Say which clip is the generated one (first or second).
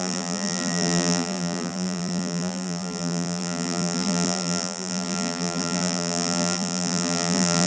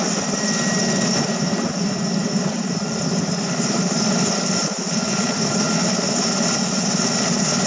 first